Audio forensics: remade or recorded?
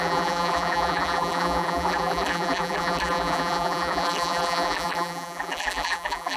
remade